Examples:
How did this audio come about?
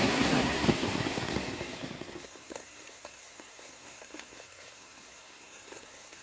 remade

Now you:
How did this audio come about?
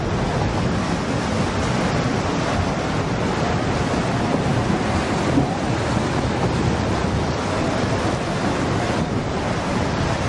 recorded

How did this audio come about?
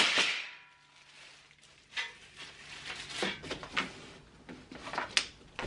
recorded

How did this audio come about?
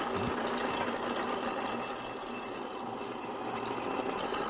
recorded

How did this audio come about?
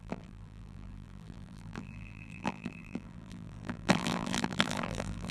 remade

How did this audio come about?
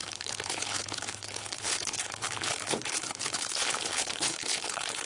remade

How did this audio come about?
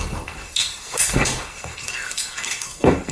remade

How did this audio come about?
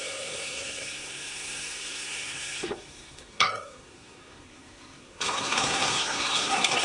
remade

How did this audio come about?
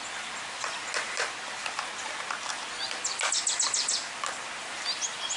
recorded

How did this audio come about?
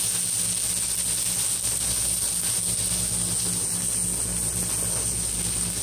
recorded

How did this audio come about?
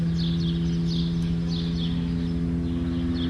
recorded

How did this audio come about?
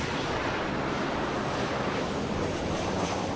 recorded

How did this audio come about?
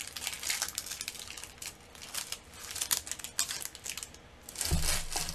recorded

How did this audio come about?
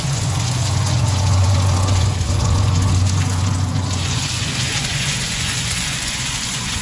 remade